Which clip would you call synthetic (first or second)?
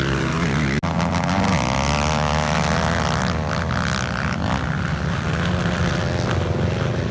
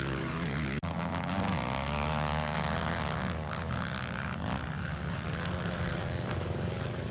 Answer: second